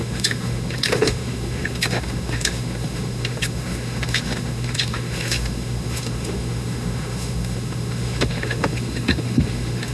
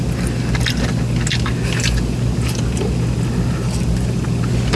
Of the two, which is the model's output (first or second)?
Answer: first